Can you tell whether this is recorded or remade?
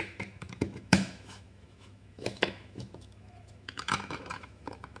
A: remade